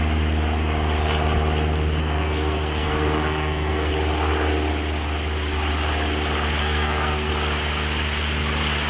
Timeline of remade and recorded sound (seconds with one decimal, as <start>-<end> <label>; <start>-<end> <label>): 0.0-2.0 recorded; 2.0-3.9 remade; 3.9-6.6 recorded; 6.6-7.3 remade; 7.3-8.9 recorded